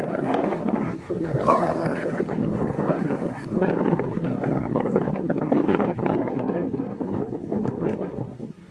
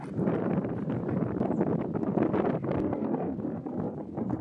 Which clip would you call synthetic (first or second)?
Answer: first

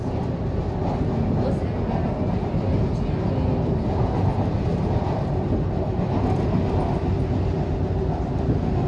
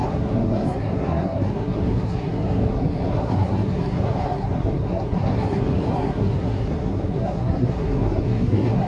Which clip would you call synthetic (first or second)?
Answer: second